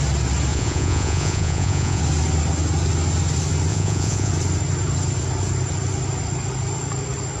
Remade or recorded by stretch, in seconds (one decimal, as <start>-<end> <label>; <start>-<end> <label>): 0.0-0.5 recorded; 0.5-2.0 remade; 2.0-3.7 recorded; 3.7-4.3 remade; 4.3-7.4 recorded